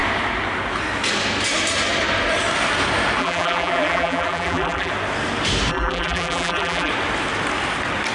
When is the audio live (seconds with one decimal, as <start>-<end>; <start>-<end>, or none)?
0.0-3.2; 4.9-5.7; 6.9-8.1